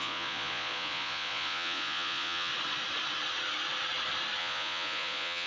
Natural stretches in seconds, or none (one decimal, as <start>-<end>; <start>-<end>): 2.5-4.4